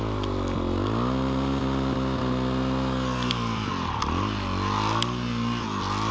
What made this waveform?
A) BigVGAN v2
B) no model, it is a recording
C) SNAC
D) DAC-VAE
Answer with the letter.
B